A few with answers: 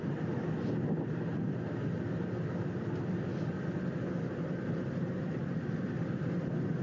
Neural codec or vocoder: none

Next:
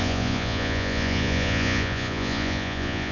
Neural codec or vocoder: vocoder, Vocos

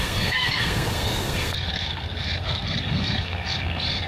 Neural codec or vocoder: codec, SNAC